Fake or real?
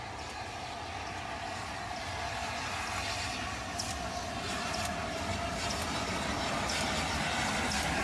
real